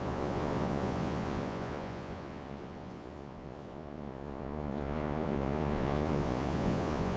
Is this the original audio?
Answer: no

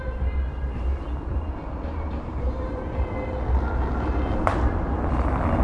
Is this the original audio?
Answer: yes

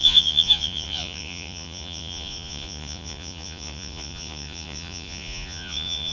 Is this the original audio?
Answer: no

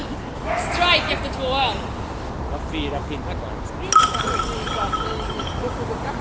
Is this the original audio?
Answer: yes